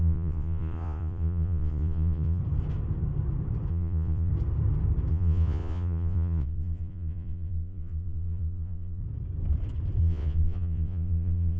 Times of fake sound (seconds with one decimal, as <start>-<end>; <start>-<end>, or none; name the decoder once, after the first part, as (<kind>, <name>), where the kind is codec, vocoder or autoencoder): 0.0-2.4 (vocoder, Vocos); 3.7-4.3; 5.1-9.0; 10.0-11.6